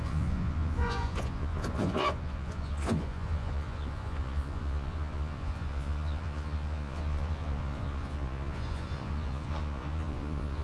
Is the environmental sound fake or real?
fake